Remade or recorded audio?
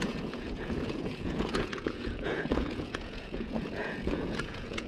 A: remade